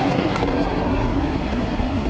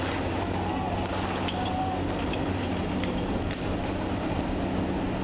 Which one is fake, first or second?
first